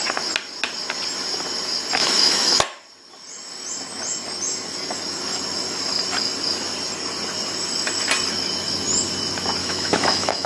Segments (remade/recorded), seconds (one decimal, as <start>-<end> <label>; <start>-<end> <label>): 0.0-2.0 recorded; 2.0-2.6 remade; 2.6-9.6 recorded; 9.6-10.5 remade

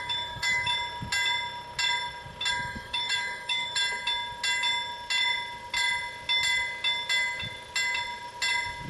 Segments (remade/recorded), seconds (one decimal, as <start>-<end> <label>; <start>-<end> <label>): 0.0-0.7 remade; 0.7-2.5 recorded; 2.5-3.8 remade; 3.8-8.9 recorded